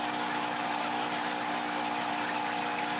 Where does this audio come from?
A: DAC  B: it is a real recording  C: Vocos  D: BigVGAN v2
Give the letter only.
B